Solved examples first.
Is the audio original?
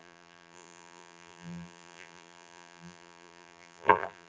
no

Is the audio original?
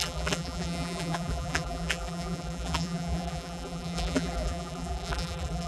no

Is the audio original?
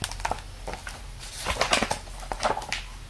yes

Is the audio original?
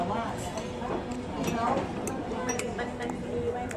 yes